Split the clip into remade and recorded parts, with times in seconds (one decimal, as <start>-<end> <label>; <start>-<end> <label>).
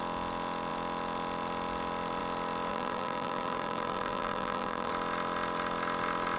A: 0.0-2.7 recorded; 2.7-4.9 remade; 4.9-6.4 recorded